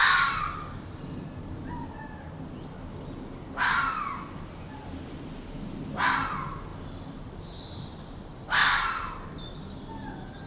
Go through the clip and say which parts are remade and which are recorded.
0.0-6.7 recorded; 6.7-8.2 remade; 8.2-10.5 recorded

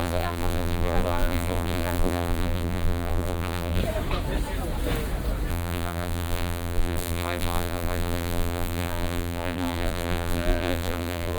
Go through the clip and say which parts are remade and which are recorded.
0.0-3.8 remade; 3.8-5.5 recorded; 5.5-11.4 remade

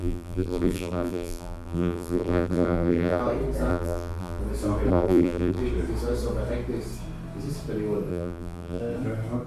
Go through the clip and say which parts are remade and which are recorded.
0.0-3.2 remade; 3.2-3.7 recorded; 3.7-4.4 remade; 4.4-4.9 recorded; 4.9-5.6 remade; 5.6-8.1 recorded; 8.1-8.8 remade; 8.8-9.5 recorded

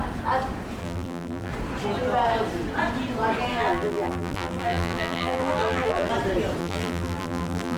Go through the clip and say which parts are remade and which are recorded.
0.0-0.8 recorded; 0.8-1.5 remade; 1.5-3.5 recorded; 3.5-6.1 remade; 6.1-6.6 recorded; 6.6-7.8 remade

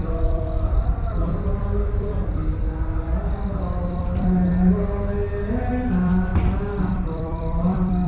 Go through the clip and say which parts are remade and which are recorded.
0.0-2.4 remade; 2.4-3.9 recorded; 3.9-4.5 remade; 4.5-5.7 recorded; 5.7-6.3 remade; 6.3-6.9 recorded; 6.9-8.1 remade

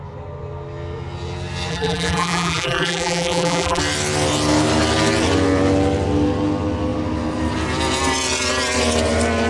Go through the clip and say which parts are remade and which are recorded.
0.0-1.7 recorded; 1.7-3.8 remade; 3.8-9.5 recorded